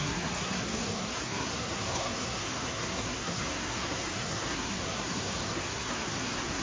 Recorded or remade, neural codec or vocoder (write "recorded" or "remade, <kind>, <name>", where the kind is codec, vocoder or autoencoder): remade, codec, SNAC